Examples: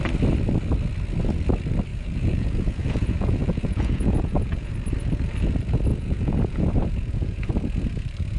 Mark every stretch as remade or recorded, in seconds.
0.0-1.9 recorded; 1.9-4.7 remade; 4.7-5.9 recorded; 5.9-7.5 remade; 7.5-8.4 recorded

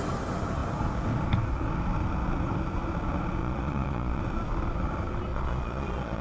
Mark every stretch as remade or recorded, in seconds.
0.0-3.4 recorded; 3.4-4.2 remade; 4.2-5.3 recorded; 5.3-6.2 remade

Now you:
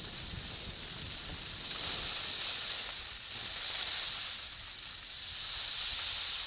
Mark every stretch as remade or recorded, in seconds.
0.0-6.5 recorded